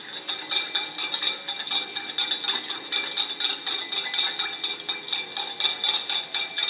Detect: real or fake real